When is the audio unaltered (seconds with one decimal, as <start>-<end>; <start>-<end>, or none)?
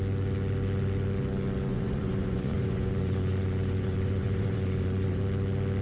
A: 0.0-1.7; 5.2-5.8